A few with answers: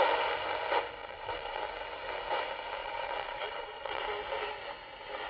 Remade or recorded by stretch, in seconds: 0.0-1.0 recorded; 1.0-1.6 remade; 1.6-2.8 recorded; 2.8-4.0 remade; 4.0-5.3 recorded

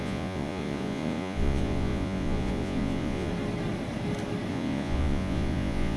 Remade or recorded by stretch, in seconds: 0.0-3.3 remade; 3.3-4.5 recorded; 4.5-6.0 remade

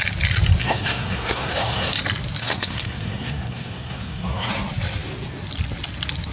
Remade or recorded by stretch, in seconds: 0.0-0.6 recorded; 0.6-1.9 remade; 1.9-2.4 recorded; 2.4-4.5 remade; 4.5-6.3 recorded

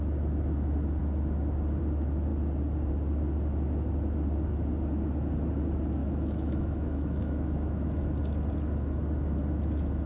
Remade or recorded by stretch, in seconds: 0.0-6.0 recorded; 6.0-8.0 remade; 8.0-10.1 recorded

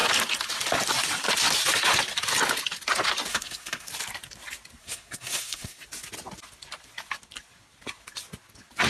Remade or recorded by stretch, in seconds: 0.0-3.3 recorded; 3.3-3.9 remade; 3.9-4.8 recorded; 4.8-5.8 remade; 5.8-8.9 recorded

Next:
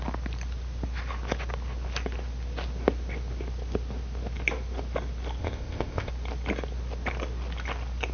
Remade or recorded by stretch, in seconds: 0.0-5.4 recorded; 5.4-6.1 remade; 6.1-8.1 recorded

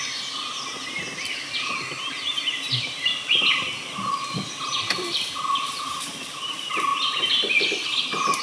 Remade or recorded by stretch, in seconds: 0.0-8.4 recorded